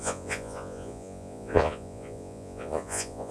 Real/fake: fake